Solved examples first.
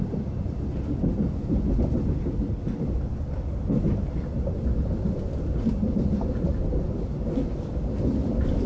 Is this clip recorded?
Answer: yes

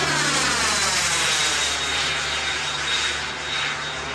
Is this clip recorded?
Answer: yes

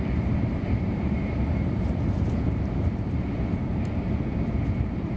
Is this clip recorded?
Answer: no